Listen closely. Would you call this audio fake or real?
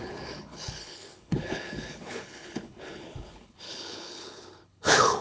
fake